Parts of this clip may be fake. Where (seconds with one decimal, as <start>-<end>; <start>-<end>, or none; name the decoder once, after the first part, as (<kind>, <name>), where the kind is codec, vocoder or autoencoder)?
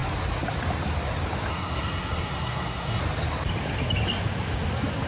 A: 1.5-3.0 (codec, SNAC)